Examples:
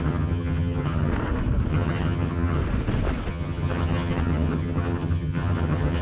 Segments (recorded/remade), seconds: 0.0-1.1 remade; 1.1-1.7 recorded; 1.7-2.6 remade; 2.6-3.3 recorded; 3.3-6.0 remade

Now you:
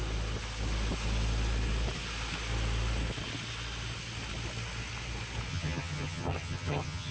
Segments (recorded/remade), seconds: 0.0-5.5 recorded; 5.5-7.1 remade

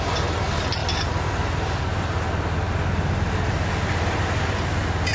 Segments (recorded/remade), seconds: 0.0-5.1 recorded

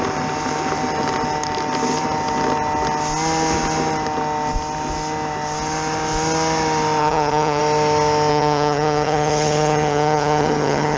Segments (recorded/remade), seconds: 0.0-7.0 recorded; 7.0-7.6 remade; 7.6-8.3 recorded; 8.3-11.0 remade

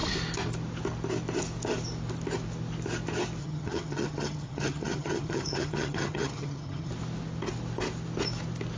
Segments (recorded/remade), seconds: 0.0-3.4 recorded; 3.4-6.9 remade; 6.9-8.8 recorded